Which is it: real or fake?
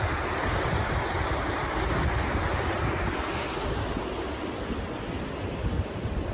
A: real